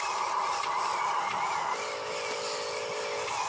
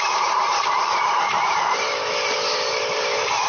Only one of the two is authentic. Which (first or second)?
first